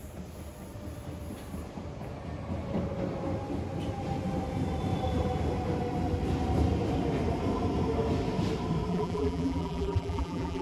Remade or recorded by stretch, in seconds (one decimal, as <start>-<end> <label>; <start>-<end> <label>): 0.0-8.9 recorded; 8.9-10.6 remade